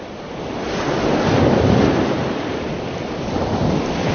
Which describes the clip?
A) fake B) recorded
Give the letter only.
B